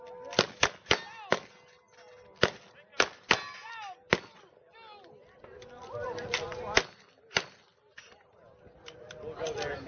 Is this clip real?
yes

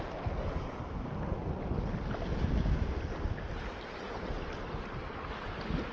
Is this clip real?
yes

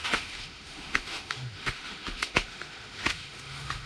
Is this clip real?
no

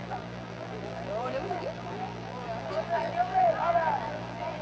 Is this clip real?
no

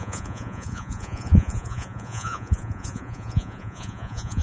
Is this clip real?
no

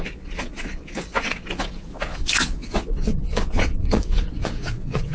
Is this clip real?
no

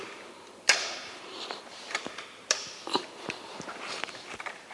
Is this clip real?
no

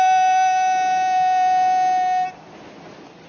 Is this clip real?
yes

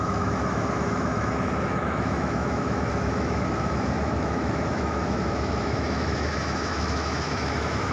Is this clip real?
no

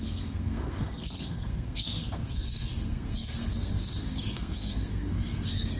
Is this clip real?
no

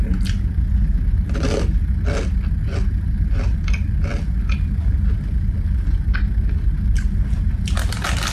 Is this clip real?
yes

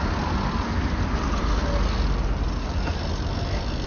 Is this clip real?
yes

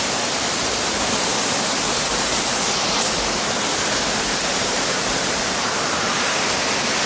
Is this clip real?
no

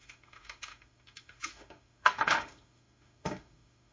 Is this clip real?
no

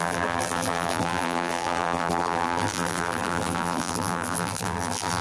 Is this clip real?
no